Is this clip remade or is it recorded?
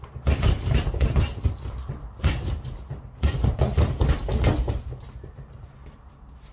recorded